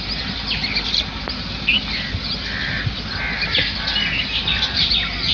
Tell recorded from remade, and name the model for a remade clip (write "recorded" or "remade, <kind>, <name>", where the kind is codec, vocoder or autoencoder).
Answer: recorded